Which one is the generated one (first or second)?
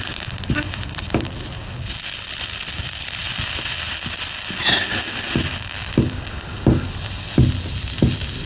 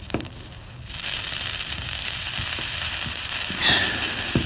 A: second